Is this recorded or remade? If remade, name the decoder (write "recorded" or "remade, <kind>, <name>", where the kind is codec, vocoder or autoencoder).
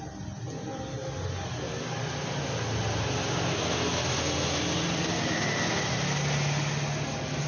recorded